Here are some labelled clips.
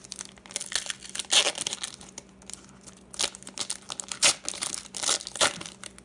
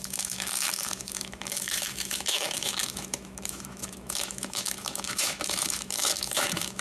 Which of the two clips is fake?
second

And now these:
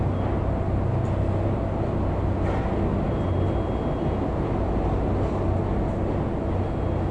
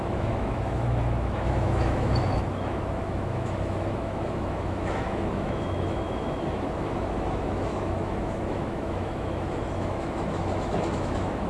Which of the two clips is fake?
second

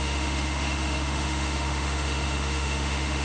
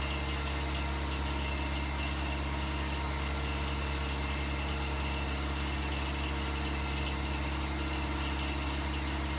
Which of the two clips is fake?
first